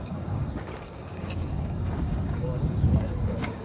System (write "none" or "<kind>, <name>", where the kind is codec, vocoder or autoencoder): codec, DAC